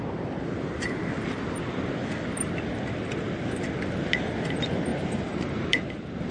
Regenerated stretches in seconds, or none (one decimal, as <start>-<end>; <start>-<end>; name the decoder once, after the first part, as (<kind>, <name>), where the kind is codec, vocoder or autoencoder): 4.9-6.3 (vocoder, BigVGAN v2)